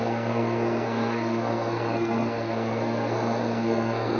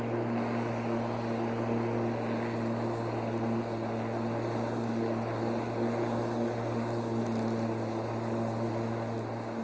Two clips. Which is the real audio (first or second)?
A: second